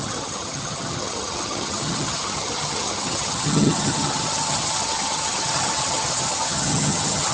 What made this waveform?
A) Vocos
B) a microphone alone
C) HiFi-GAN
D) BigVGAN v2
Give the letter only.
C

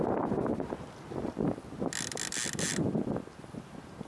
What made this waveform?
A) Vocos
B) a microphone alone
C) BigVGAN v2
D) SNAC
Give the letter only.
B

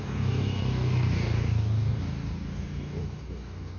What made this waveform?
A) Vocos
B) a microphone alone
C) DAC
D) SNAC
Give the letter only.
C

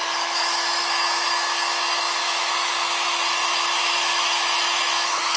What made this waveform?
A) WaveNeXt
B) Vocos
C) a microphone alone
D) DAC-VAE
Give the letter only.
D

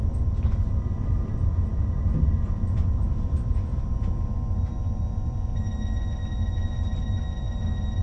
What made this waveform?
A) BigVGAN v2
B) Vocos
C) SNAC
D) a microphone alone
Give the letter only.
D